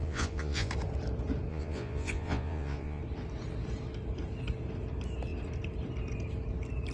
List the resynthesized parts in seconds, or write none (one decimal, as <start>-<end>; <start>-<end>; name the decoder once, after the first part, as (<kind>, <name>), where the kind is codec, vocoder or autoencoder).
0.0-0.7 (vocoder, Vocos); 1.5-3.0